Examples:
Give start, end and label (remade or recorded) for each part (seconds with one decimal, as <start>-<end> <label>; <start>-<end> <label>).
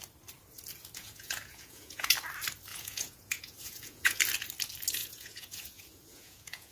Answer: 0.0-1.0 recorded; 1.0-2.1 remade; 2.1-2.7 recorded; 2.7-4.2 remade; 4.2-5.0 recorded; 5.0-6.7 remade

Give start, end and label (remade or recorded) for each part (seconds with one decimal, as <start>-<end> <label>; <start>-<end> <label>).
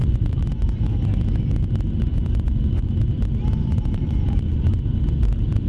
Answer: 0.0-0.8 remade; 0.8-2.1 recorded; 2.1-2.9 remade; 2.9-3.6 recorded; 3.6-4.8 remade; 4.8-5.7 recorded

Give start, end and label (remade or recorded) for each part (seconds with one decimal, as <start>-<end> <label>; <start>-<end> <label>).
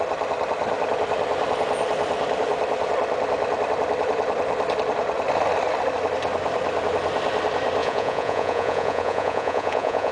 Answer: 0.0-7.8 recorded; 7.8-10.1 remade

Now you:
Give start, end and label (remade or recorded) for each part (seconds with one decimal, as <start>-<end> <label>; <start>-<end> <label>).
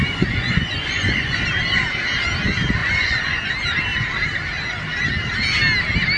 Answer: 0.0-1.4 remade; 1.4-2.8 recorded; 2.8-3.5 remade; 3.5-6.2 recorded